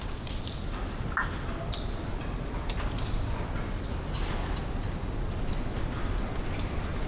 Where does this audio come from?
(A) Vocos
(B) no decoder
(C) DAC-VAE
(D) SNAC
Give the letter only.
B